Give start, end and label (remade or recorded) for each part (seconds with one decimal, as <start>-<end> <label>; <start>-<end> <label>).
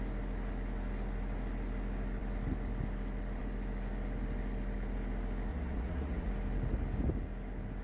0.0-5.5 recorded; 5.5-6.3 remade; 6.3-7.8 recorded